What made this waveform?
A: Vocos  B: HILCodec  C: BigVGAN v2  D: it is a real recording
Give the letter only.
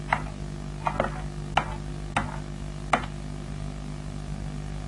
D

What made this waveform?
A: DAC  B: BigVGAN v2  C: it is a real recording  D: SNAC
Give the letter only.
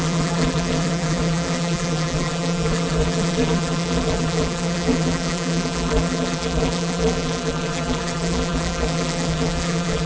B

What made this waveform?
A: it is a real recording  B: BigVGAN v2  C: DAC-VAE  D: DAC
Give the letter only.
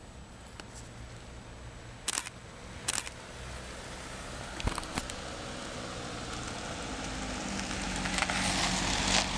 A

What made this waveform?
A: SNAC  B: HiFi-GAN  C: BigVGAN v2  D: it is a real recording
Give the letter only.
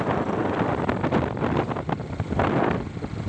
D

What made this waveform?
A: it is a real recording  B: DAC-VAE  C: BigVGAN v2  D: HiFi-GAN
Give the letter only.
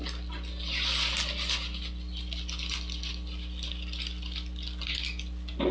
A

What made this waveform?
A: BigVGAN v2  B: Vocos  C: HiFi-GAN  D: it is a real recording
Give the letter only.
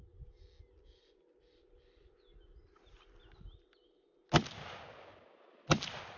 D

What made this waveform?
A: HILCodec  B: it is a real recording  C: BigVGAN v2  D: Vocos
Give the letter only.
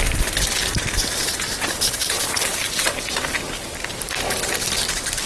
B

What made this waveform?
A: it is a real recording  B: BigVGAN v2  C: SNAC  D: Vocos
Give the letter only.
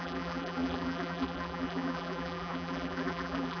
B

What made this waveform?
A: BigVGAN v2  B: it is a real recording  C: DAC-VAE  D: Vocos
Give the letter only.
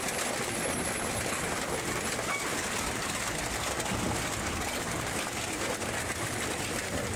B